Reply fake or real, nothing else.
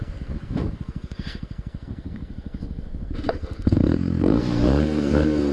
fake